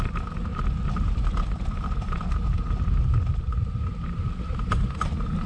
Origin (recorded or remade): recorded